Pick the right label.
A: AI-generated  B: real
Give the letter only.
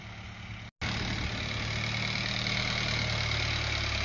B